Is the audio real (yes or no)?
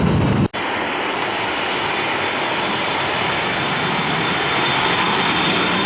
yes